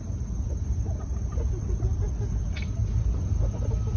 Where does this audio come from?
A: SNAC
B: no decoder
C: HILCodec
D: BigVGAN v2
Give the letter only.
B